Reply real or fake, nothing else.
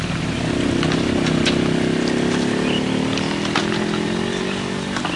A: real